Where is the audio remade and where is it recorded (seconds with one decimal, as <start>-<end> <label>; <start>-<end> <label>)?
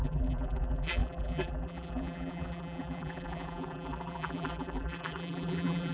0.0-5.9 remade